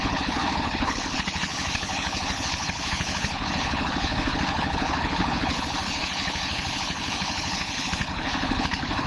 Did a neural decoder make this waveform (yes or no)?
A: yes